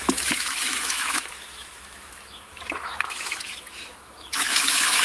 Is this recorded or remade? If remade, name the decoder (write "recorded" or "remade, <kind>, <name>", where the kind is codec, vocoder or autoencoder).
remade, autoencoder, DAC-VAE